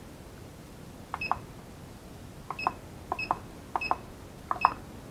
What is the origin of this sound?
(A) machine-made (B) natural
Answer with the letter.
B